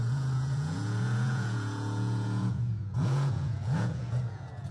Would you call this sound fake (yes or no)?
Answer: yes